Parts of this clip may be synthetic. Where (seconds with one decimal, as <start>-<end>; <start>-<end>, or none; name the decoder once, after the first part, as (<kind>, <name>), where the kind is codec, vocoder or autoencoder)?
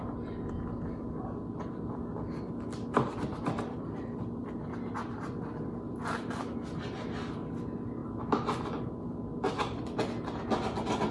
3.3-6.3 (vocoder, BigVGAN v2)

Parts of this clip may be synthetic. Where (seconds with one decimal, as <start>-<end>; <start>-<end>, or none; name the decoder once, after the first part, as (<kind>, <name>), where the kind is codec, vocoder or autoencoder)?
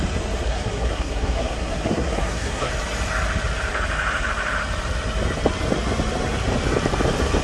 0.5-2.7 (codec, SNAC)